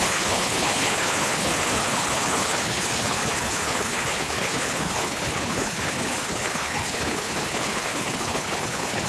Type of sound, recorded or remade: remade